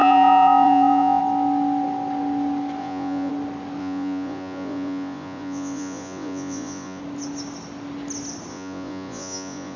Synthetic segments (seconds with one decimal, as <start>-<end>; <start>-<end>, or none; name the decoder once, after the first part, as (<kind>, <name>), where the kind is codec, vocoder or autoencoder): 0.0-1.2 (vocoder, Vocos); 2.8-3.3; 3.8-7.0; 8.5-9.8